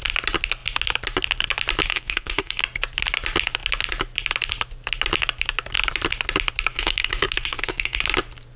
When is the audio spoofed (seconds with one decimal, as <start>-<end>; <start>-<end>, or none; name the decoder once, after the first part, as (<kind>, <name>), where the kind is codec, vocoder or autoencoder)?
1.9-2.6 (codec, SNAC); 6.7-8.0